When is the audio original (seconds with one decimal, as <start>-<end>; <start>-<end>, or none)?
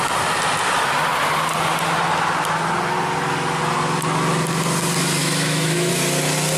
0.0-5.2; 5.9-6.6